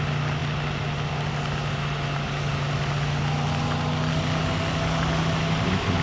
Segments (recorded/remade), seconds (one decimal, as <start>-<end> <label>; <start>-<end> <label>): 0.0-6.0 recorded